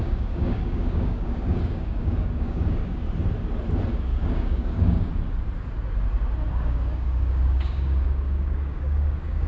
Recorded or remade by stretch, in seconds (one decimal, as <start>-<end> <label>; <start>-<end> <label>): 0.0-3.0 remade; 3.0-3.9 recorded; 3.9-5.1 remade; 5.1-6.5 recorded; 6.5-9.5 remade